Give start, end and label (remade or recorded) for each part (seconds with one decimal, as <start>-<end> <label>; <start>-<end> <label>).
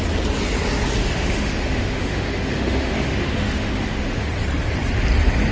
0.0-1.0 recorded; 1.0-4.3 remade; 4.3-5.5 recorded